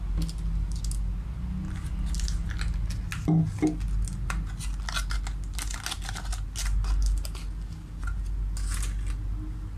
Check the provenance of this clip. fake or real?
real